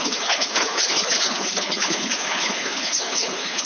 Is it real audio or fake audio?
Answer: fake